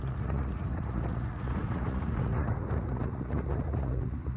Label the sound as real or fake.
fake